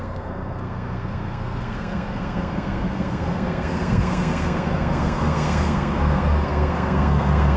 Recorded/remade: remade